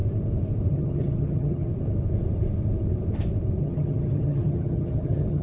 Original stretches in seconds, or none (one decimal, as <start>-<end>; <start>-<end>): 0.0-0.7; 1.7-3.6